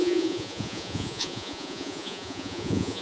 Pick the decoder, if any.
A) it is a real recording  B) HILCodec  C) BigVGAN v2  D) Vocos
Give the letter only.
D